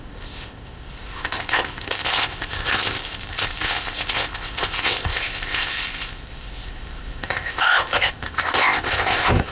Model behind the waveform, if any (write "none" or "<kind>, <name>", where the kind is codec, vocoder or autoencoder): codec, ZipCodec